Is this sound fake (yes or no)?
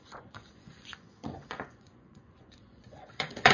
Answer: yes